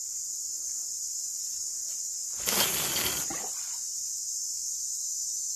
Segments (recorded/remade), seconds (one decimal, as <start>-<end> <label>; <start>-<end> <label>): 0.0-5.6 recorded